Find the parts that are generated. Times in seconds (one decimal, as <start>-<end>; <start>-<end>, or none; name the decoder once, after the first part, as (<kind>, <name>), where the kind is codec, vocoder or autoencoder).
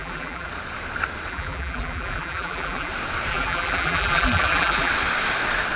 0.0-0.5 (vocoder, BigVGAN v2); 1.3-2.9; 3.3-4.9